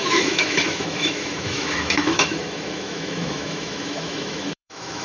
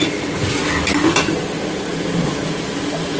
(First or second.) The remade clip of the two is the first